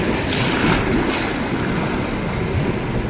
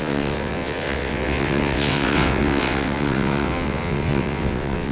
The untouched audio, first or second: first